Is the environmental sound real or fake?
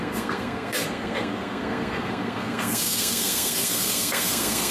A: fake